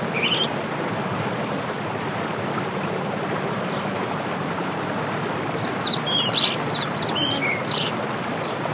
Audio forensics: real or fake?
real